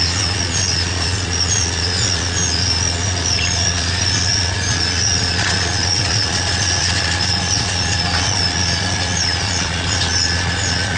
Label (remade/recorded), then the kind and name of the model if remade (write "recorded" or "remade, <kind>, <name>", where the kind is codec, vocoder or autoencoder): remade, vocoder, Vocos